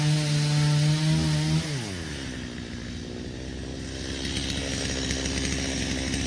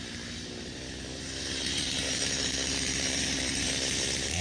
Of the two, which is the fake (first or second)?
second